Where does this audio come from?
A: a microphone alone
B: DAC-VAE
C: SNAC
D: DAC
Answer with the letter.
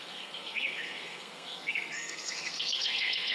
C